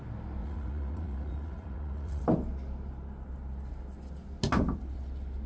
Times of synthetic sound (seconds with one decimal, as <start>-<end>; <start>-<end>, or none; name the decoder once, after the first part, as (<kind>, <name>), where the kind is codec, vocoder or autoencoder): 0.4-2.2 (vocoder, Vocos)